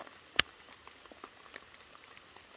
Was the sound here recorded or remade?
recorded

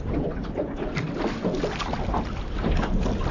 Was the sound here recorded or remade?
recorded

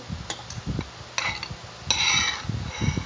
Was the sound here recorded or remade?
recorded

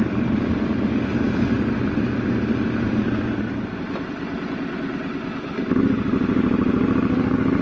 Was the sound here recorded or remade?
recorded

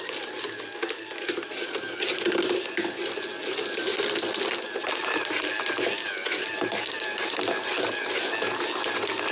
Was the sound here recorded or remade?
recorded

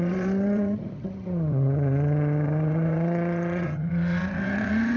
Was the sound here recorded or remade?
remade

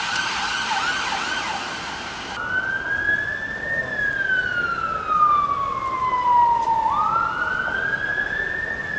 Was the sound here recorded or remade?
recorded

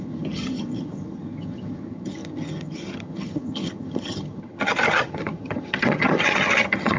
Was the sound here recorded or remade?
remade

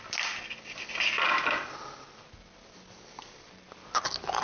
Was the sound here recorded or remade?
recorded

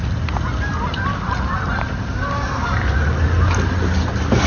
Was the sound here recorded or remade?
recorded